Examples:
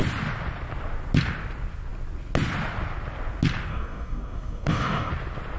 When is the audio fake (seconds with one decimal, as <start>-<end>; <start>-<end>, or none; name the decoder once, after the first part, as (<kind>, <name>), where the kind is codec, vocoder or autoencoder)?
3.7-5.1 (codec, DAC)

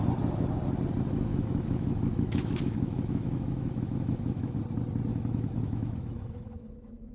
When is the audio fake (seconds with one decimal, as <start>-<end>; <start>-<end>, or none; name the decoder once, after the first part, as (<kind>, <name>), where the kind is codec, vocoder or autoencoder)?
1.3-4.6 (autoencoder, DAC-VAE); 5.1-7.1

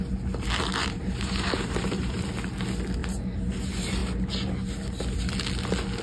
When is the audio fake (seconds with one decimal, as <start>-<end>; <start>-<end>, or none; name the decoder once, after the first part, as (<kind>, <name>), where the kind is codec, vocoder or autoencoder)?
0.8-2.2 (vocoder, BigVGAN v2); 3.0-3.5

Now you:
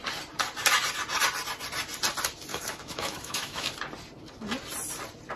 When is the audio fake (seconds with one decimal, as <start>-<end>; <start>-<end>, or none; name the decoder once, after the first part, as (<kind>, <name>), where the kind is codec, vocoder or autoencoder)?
2.5-3.7 (autoencoder, DAC-VAE)